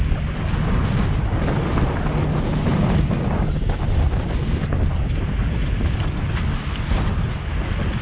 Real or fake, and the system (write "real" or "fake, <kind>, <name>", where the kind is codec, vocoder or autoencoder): real